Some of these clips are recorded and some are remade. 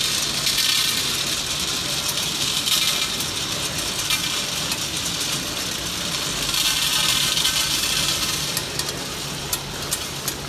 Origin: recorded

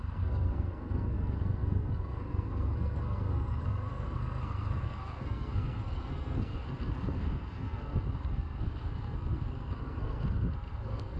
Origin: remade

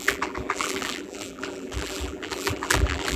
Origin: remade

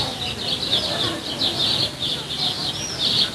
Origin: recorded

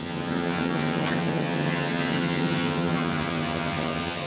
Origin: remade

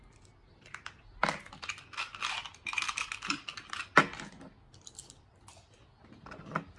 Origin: recorded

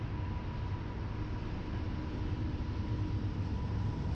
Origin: recorded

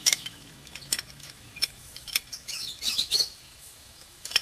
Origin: remade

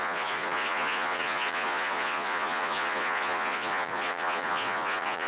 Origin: remade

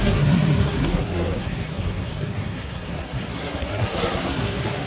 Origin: remade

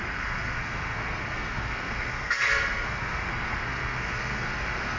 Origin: remade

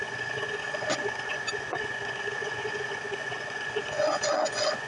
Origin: remade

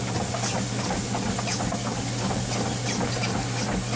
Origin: recorded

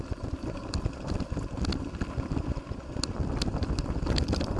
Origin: recorded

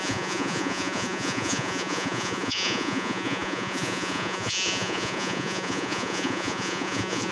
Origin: remade